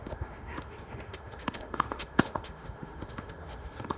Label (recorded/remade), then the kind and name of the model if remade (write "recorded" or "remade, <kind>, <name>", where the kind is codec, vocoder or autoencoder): remade, autoencoder, DAC-VAE